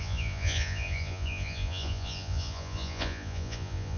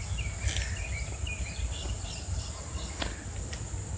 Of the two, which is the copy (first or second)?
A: first